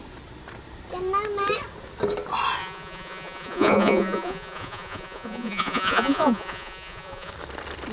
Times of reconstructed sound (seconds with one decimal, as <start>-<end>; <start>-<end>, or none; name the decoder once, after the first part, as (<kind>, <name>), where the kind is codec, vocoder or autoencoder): 2.6-7.3 (vocoder, Vocos)